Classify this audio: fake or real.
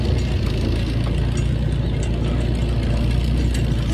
real